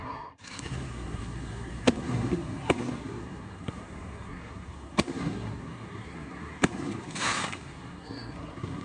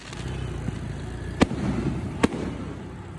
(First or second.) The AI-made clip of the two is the first